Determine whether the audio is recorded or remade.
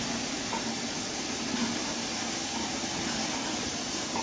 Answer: recorded